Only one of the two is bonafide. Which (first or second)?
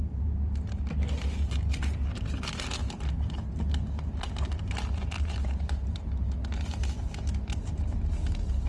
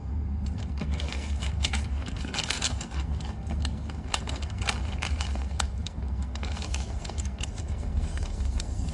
first